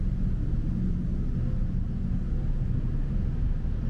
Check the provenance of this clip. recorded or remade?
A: recorded